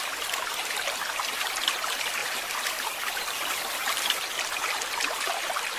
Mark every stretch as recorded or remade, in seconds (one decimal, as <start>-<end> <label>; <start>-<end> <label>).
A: 0.0-5.8 recorded

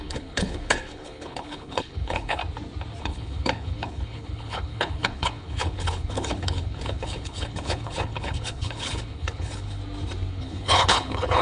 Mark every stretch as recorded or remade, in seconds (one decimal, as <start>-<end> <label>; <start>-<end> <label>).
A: 0.0-2.4 remade; 2.4-3.0 recorded; 3.0-9.8 remade; 9.8-10.3 recorded; 10.3-11.4 remade

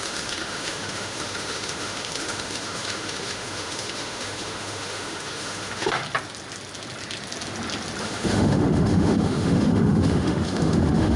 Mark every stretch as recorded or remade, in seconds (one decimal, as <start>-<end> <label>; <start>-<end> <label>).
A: 0.0-6.0 remade; 6.0-8.0 recorded; 8.0-11.2 remade

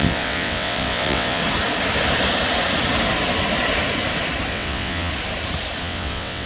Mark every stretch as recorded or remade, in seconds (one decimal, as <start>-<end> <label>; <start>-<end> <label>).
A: 0.0-1.4 remade; 1.4-4.5 recorded; 4.5-5.1 remade; 5.1-5.8 recorded; 5.8-6.5 remade

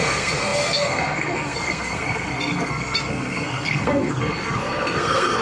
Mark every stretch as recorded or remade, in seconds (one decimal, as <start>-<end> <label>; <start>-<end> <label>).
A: 0.0-5.4 remade